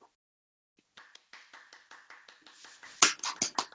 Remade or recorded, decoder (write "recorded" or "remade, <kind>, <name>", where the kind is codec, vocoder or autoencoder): recorded